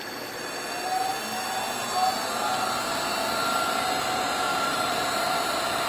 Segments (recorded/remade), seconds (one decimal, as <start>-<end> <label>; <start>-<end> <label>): 0.0-4.5 recorded; 4.5-5.1 remade; 5.1-5.9 recorded